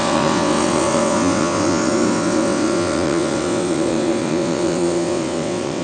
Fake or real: fake